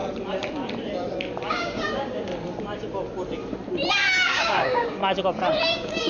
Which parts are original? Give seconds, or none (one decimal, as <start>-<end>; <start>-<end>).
0.0-1.5; 2.3-3.9; 5.0-5.6